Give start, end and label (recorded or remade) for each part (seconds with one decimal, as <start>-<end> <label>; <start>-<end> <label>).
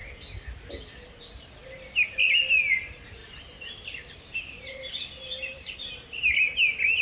0.0-3.2 recorded; 3.2-5.9 remade; 5.9-7.0 recorded